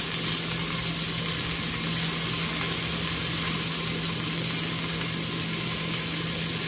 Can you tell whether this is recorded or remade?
recorded